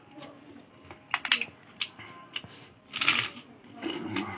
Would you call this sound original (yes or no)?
yes